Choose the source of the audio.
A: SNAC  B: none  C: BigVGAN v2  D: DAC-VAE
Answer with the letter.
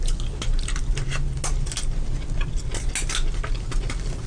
B